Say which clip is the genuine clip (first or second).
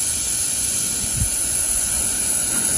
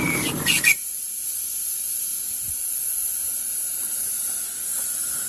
second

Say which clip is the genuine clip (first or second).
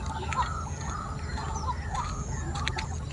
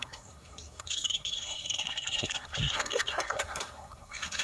first